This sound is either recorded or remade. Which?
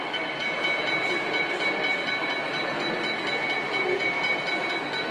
recorded